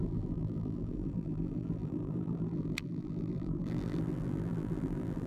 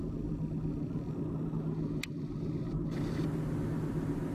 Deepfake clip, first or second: first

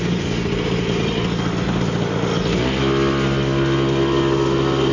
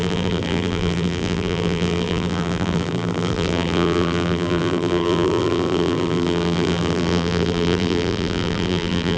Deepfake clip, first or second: second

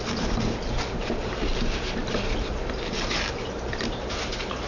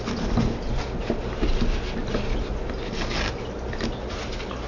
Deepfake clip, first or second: first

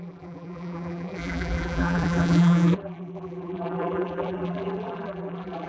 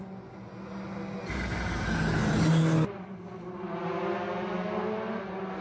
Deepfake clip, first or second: first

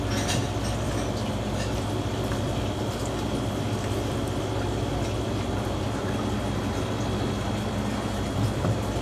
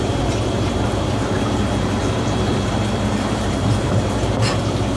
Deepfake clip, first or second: second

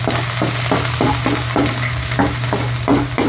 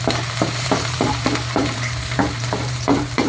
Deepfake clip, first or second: second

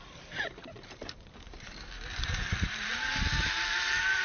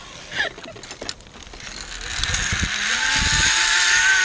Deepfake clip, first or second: first